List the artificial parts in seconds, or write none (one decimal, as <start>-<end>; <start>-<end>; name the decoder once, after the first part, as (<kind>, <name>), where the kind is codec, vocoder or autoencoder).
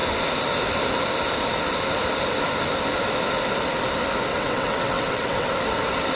4.3-5.5 (vocoder, WaveNeXt)